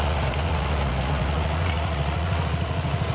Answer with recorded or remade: remade